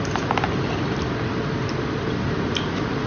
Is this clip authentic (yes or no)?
yes